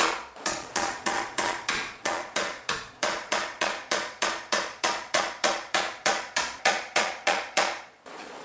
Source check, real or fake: fake